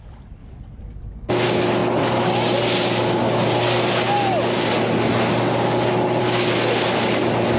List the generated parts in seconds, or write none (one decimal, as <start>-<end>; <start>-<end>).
none